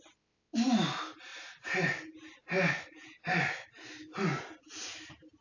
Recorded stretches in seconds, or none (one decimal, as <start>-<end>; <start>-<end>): 0.0-5.4